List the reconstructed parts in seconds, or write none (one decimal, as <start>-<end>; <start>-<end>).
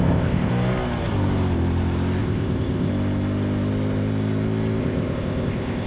0.0-0.5; 2.2-2.9; 4.8-5.9